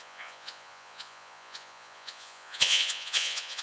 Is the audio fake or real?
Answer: fake